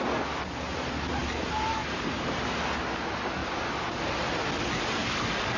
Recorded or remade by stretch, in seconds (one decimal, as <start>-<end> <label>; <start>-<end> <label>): 0.0-1.2 recorded; 1.2-2.8 remade; 2.8-3.4 recorded; 3.4-4.5 remade; 4.5-5.6 recorded